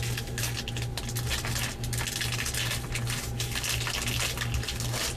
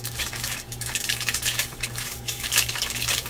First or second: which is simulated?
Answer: second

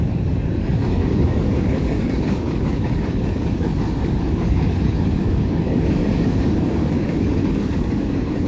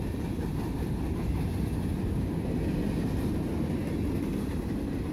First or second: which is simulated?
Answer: first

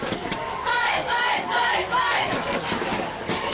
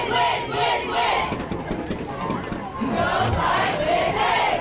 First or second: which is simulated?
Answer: first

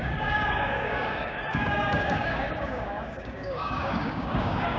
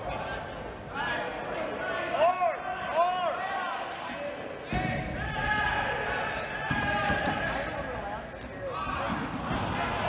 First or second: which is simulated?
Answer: first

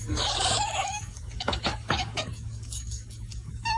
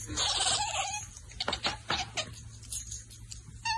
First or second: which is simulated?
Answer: first